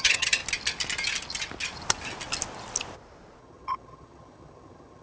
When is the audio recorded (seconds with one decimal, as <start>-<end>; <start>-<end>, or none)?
0.4-3.4

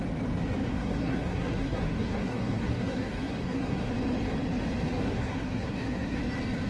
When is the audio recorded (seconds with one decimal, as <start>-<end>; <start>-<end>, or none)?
0.0-0.7; 3.9-5.0; 6.2-6.7

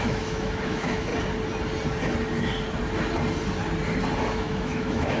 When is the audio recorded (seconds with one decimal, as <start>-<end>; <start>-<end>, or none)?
1.1-4.2

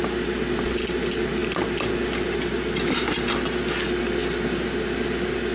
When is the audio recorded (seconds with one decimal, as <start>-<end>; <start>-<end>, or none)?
0.0-5.5

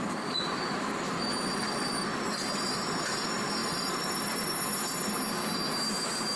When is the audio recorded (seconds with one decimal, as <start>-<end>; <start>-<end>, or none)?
0.0-3.6; 4.3-6.4

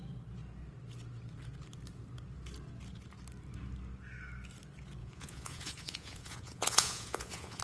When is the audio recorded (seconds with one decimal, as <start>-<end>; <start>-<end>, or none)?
0.0-5.0

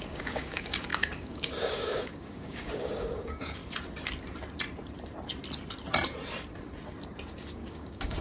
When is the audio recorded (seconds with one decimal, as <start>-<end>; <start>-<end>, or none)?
3.6-7.4

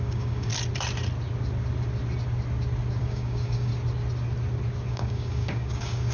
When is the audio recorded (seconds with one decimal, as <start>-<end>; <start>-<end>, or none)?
0.5-3.0; 3.7-4.9